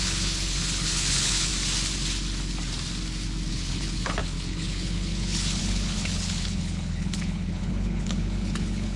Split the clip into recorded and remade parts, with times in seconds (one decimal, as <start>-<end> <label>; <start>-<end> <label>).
0.0-1.5 remade; 1.5-3.5 recorded; 3.5-9.0 remade

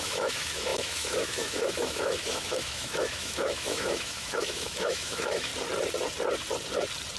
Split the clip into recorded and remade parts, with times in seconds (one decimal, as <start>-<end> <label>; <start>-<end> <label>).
0.0-5.5 remade; 5.5-7.2 recorded

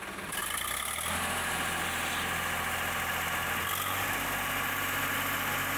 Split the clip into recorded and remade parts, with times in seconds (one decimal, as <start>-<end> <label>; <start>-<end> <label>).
0.0-5.8 recorded

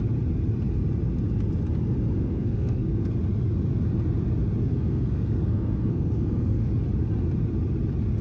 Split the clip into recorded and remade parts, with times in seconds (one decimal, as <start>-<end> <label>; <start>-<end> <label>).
0.0-2.2 recorded; 2.2-3.1 remade; 3.1-4.6 recorded; 4.6-6.7 remade; 6.7-8.2 recorded

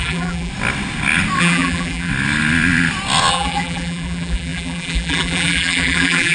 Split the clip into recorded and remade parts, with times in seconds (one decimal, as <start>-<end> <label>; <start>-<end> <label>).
0.0-0.5 remade; 0.5-1.4 recorded; 1.4-2.1 remade; 2.1-3.3 recorded; 3.3-6.3 remade